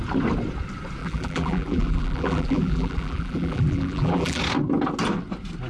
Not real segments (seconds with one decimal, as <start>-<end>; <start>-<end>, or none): 1.0-4.4